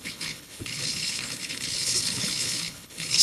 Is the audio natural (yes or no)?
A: no